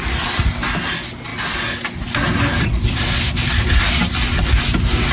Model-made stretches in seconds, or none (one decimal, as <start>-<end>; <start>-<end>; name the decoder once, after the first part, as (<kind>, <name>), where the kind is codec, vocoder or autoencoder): none